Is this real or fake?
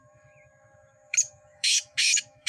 fake